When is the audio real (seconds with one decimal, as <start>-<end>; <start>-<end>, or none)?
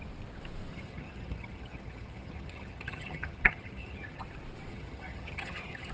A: 0.0-0.7; 4.2-4.7